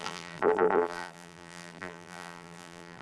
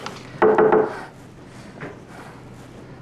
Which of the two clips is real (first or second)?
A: second